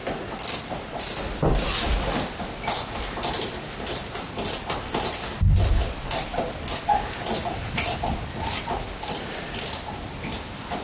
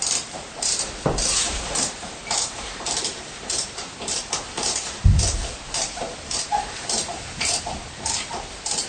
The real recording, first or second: first